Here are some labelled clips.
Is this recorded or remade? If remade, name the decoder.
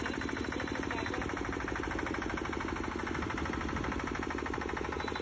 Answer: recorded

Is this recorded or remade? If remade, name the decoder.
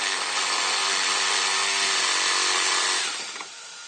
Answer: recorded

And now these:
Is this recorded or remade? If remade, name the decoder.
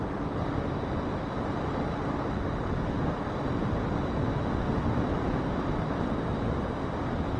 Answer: recorded